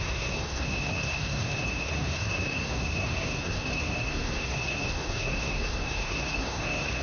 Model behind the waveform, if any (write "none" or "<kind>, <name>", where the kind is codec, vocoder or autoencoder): codec, SNAC